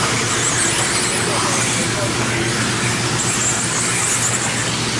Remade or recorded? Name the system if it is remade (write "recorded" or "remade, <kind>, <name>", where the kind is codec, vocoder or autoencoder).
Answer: recorded